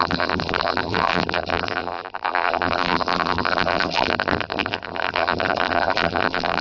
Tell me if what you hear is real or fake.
fake